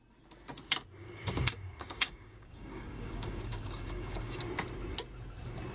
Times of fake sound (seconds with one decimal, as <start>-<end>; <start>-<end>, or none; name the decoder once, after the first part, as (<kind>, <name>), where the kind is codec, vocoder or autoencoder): 1.0-4.4 (codec, DAC)